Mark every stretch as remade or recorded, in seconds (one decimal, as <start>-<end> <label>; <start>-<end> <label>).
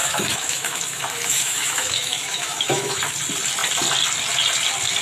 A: 0.0-3.0 remade; 3.0-5.0 recorded